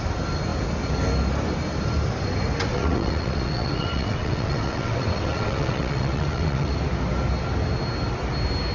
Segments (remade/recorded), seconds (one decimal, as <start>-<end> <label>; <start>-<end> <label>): 0.0-2.7 recorded; 2.7-6.7 remade; 6.7-8.7 recorded